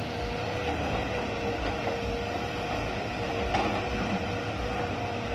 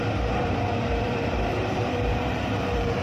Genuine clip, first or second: first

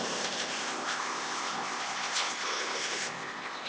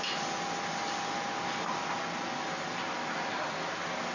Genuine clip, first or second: second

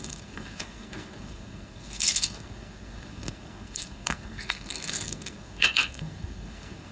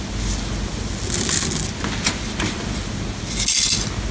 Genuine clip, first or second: second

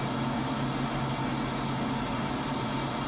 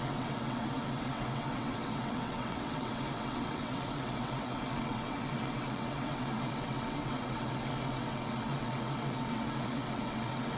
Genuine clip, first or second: first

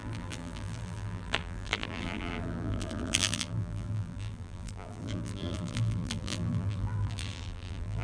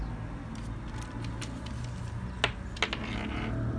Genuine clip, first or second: second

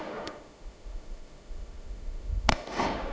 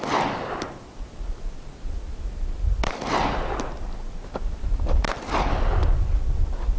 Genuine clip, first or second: second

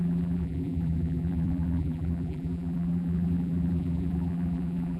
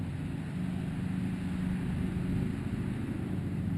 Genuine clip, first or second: second